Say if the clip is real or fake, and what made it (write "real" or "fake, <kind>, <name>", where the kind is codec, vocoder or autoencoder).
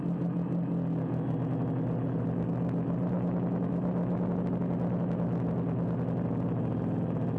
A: real